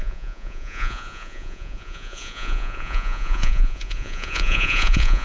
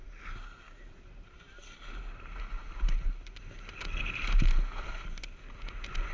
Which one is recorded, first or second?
second